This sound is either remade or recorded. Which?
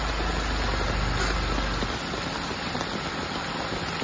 recorded